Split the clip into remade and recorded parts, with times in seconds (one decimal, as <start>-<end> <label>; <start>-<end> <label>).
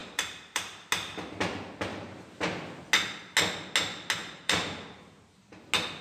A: 0.0-0.9 remade; 0.9-1.9 recorded; 1.9-2.4 remade; 2.4-4.2 recorded; 4.2-5.4 remade; 5.4-6.0 recorded